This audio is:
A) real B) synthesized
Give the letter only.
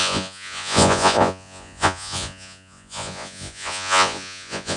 B